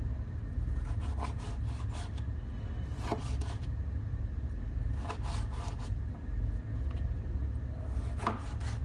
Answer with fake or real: real